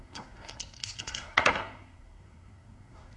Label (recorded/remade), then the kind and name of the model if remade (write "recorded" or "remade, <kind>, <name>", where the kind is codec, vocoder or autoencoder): remade, codec, SNAC